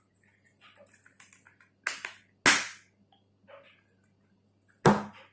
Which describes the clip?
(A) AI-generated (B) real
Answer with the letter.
B